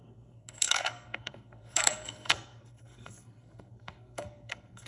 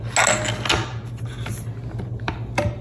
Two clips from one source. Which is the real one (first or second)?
second